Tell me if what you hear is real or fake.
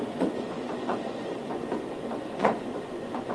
fake